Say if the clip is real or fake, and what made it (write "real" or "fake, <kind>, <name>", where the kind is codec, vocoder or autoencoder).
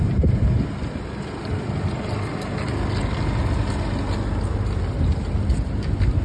real